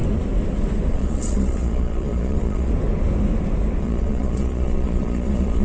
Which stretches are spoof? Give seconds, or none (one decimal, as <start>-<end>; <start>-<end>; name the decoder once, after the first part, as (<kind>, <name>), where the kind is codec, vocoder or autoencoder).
0.9-2.7 (vocoder, Vocos); 3.8-5.6